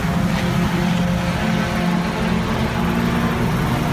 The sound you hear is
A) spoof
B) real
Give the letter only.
B